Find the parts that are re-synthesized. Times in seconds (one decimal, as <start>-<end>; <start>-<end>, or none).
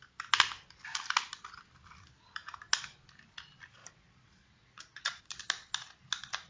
3.8-5.2